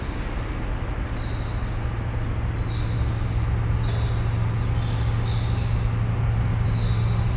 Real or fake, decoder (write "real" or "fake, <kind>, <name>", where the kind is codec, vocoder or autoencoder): real